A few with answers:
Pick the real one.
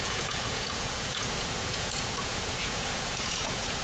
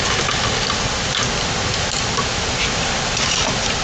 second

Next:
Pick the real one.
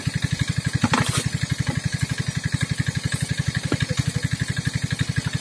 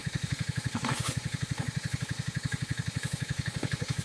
first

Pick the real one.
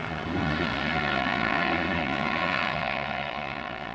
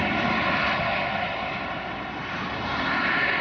second